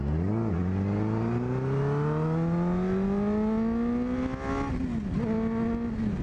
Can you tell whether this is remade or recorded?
recorded